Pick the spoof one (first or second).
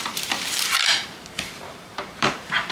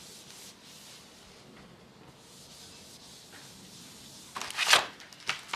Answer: first